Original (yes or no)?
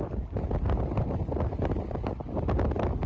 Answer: yes